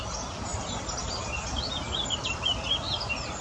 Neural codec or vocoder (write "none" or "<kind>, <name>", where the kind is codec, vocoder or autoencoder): none